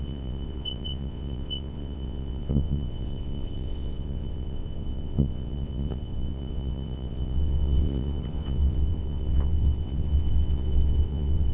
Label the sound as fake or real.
fake